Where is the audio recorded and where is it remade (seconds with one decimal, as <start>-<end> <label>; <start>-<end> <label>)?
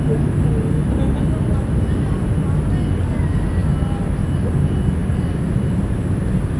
0.0-6.6 recorded